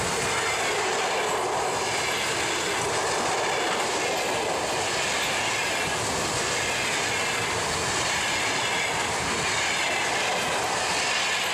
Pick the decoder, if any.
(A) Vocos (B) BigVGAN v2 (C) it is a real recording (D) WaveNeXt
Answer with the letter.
C